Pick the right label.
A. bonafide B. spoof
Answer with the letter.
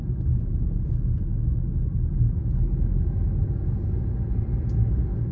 A